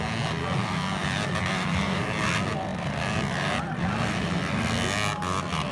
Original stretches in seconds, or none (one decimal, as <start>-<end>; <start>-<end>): 0.0-5.7